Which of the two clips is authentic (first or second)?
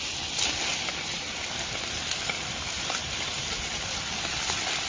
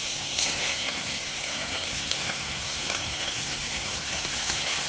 first